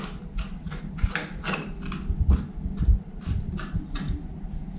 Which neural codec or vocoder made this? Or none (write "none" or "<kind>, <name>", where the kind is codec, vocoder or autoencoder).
none